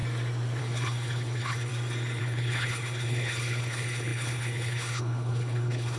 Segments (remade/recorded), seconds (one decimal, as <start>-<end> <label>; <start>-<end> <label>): 0.0-0.6 recorded; 0.6-1.7 remade; 1.7-2.2 recorded; 2.2-6.0 remade

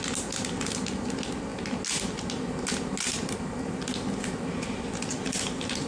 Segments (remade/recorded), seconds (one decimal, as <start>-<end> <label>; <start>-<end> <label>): 0.0-5.9 recorded